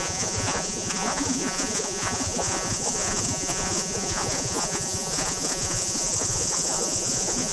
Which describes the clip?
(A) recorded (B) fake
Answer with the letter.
B